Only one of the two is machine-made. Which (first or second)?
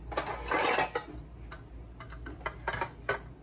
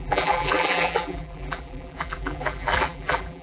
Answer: second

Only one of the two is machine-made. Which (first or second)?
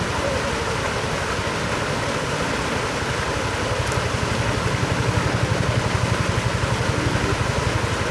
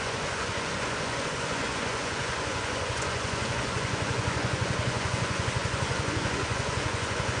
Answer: second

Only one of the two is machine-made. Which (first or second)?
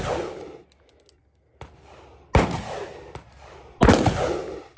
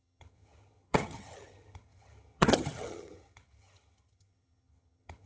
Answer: second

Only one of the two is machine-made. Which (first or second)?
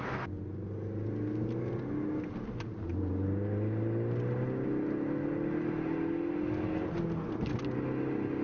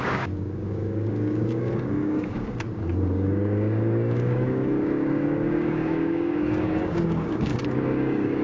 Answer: second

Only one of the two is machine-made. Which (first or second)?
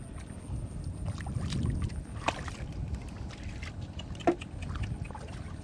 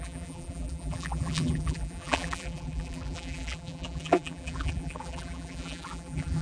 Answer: second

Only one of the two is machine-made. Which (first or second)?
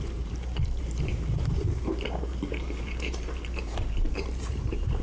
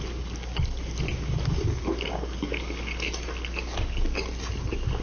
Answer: first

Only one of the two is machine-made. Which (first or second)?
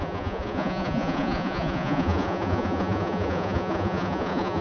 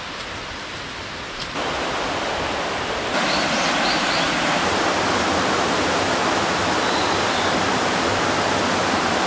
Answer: first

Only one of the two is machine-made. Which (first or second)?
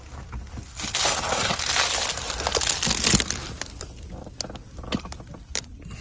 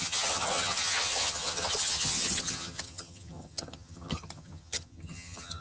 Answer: second